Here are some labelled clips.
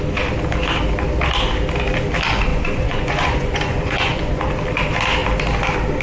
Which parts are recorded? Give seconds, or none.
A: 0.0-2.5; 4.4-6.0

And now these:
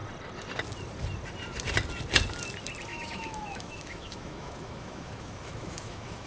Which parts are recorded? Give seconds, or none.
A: 0.0-2.9

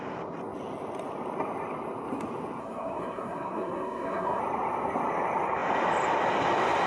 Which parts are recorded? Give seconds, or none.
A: 0.0-2.6; 4.4-6.9